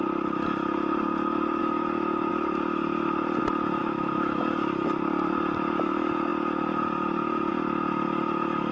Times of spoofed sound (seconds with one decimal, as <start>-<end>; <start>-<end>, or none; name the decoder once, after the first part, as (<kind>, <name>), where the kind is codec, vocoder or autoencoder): 1.6-2.3 (autoencoder, DAC-VAE); 3.8-4.4